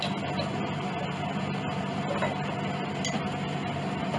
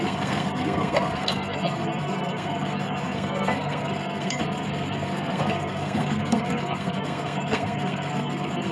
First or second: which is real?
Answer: first